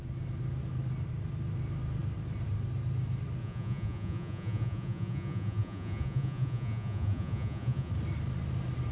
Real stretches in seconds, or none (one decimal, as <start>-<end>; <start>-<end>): 0.0-3.4; 7.9-8.9